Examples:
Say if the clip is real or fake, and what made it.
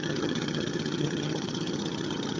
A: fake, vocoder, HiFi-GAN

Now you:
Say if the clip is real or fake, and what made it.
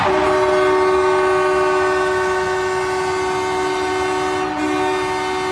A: real